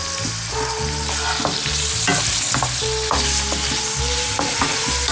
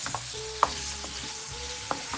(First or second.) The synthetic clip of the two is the second